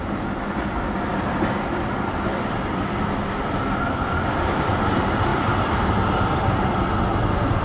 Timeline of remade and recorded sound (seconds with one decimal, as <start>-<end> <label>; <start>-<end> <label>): 0.0-1.1 recorded; 1.1-4.7 remade; 4.7-5.3 recorded; 5.3-6.0 remade; 6.0-7.6 recorded